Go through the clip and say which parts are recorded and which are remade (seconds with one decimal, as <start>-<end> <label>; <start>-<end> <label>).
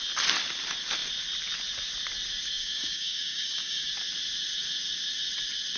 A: 0.0-2.6 recorded; 2.6-3.9 remade; 3.9-5.8 recorded